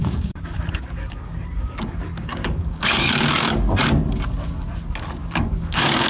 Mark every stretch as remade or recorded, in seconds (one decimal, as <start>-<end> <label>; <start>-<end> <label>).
0.0-3.7 remade; 3.7-5.2 recorded; 5.2-6.1 remade